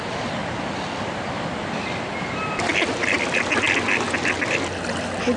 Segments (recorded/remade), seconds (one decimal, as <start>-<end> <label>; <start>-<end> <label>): 0.0-5.4 recorded